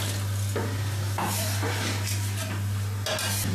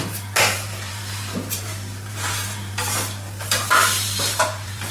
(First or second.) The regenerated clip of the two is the second